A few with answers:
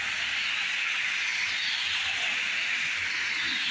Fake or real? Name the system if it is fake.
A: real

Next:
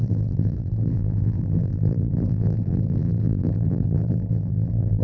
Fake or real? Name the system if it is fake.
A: fake, vocoder, BigVGAN v2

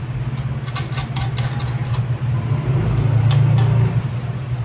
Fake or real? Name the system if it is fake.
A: real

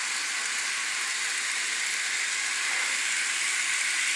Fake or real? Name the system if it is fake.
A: real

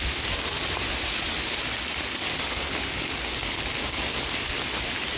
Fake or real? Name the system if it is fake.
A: real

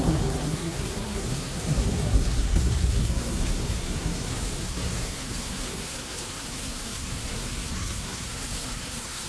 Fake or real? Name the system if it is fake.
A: fake, codec, SNAC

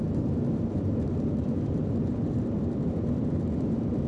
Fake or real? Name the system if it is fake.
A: fake, vocoder, BigVGAN v2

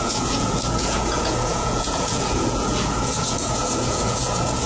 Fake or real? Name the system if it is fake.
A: fake, vocoder, Vocos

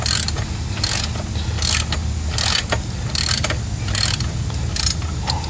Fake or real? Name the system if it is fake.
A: real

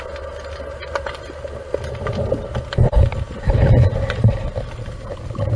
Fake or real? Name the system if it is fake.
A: real